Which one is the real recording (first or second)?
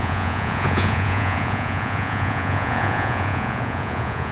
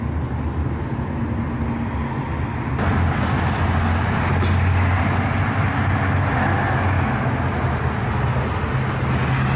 second